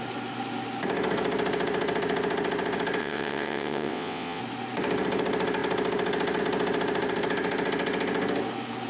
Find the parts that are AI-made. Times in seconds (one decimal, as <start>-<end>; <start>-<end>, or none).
3.0-4.4